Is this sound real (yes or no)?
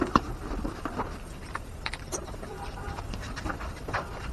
no